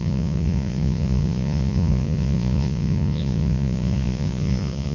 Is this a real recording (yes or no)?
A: no